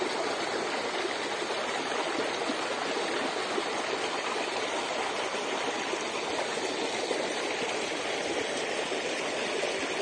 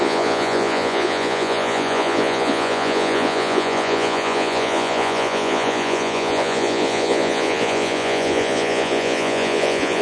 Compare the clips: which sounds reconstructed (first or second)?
second